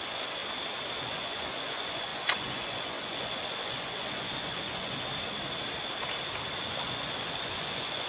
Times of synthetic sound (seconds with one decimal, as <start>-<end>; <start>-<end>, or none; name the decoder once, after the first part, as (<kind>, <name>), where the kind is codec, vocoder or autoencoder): 0.0-0.4 (vocoder, Vocos); 1.0-5.1; 6.6-8.1